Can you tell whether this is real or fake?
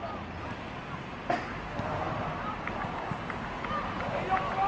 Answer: real